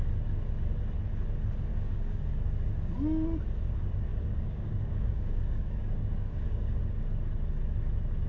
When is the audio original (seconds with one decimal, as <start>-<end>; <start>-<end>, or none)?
0.0-1.7; 2.2-4.1; 6.8-8.3